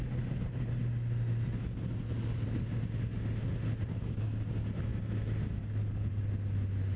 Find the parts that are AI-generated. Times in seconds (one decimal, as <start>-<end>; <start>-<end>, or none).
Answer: none